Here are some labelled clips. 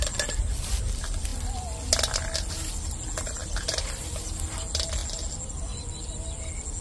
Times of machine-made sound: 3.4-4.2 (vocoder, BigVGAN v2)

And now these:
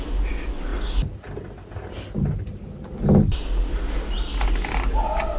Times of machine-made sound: none

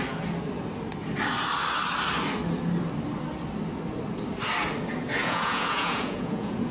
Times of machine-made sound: 5.2-6.7 (vocoder, Vocos)

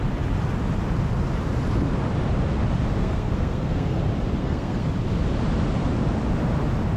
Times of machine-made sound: 3.0-4.0 (codec, SNAC); 4.4-4.9

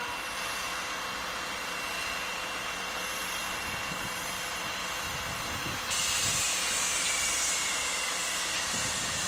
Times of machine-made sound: 4.8-5.4 (vocoder, BigVGAN v2)